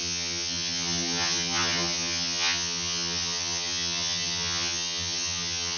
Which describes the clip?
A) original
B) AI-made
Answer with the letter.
B